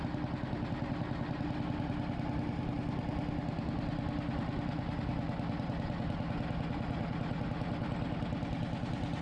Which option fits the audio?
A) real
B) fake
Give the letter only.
A